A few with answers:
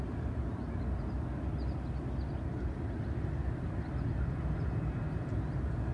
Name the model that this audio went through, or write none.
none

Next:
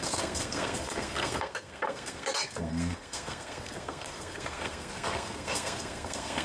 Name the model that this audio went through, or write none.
codec, SNAC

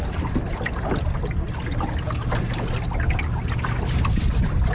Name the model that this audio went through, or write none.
none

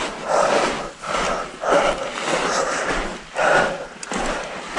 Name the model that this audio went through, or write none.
none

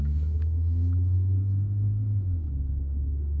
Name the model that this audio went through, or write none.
codec, SNAC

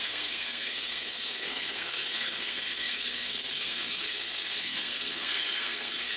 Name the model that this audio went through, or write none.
codec, SNAC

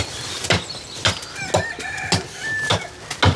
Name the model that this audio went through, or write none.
none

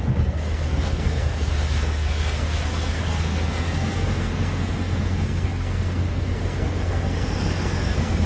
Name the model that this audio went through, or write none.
codec, SNAC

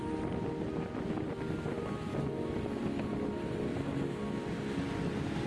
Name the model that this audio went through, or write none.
none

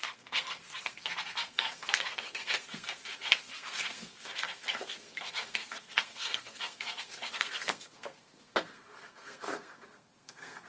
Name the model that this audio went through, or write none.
codec, SNAC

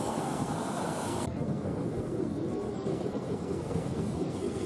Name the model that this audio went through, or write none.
codec, SNAC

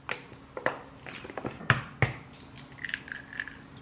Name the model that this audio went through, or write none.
none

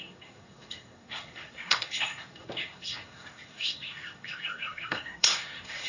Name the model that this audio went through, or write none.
codec, SNAC